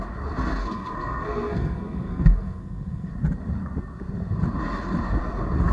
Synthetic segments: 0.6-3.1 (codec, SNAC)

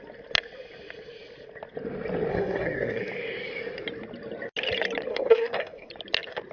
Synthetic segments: 2.3-3.0 (codec, SNAC); 5.1-5.9

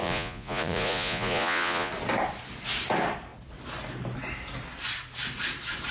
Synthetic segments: 0.0-1.9 (vocoder, Vocos)

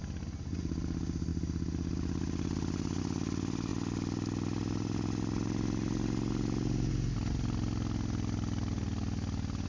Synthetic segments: 1.3-3.0 (vocoder, BigVGAN v2)

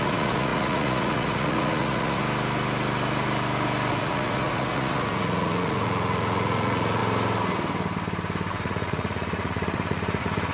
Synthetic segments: 0.0-2.2 (vocoder, Vocos); 3.9-7.0; 8.5-10.5

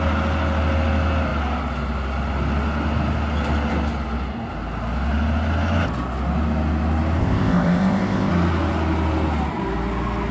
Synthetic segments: 7.2-8.3 (codec, ZipCodec)

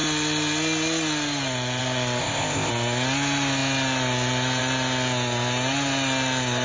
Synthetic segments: 2.2-2.7 (codec, ZipCodec)